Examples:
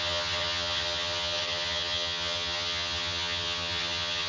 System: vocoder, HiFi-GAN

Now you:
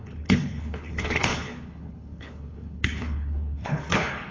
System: codec, HILCodec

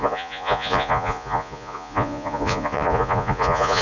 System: vocoder, Vocos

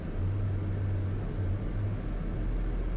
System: none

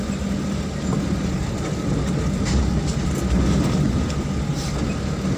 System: none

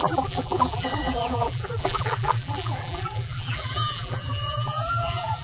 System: vocoder, BigVGAN v2